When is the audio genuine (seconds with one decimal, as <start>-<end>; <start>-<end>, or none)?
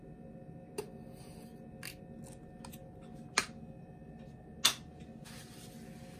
0.0-6.2